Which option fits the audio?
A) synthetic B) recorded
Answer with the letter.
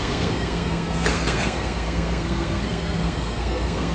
A